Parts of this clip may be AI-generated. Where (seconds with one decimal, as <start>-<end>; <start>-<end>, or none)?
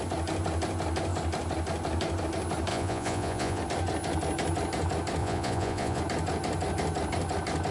2.7-3.6; 5.2-6.0